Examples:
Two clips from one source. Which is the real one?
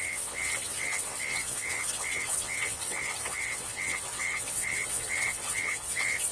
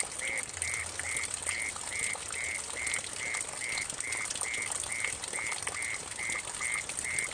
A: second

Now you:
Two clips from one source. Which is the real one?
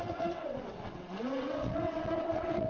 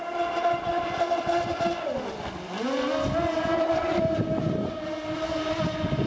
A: second